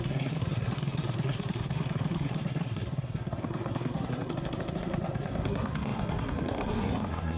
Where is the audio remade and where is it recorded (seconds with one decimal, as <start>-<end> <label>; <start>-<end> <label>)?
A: 0.0-7.4 remade